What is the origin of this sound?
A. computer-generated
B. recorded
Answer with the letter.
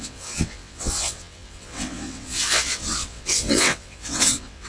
A